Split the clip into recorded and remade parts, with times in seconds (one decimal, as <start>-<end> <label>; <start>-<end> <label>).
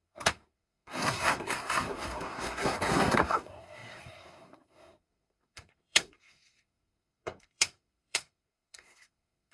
0.0-9.5 remade